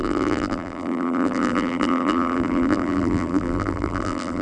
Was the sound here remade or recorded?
remade